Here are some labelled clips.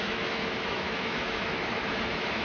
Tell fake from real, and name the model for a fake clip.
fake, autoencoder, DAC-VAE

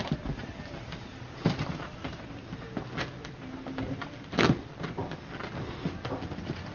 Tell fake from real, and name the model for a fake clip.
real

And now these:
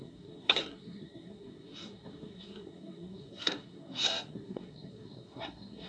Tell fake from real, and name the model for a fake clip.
fake, codec, SNAC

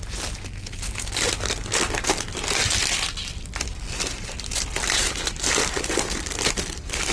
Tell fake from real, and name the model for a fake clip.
real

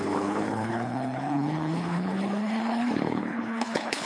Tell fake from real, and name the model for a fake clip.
fake, codec, HILCodec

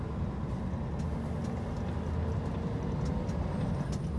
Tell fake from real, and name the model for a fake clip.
real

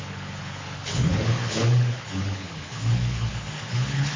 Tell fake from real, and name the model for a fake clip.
fake, codec, HILCodec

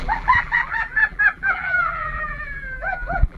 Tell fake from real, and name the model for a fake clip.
fake, vocoder, BigVGAN v2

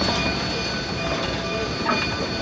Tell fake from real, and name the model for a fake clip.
real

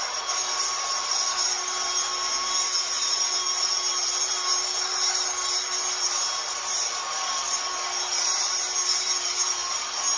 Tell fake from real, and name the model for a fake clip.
real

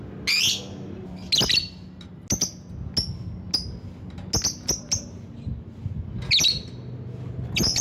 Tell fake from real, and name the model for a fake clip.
real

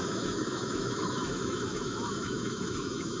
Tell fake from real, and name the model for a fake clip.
fake, autoencoder, DAC-VAE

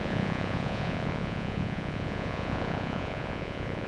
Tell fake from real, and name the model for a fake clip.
fake, vocoder, Vocos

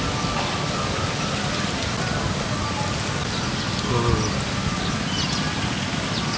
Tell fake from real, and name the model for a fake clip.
real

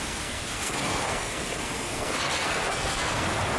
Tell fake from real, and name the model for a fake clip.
fake, codec, SNAC